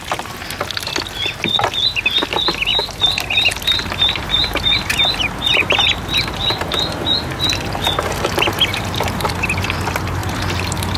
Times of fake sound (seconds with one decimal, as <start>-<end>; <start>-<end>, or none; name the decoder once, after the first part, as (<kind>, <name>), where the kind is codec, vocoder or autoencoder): 2.7-6.3 (vocoder, BigVGAN v2); 8.7-9.3; 10.2-11.0